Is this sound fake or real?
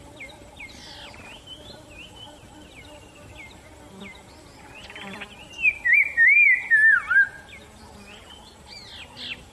real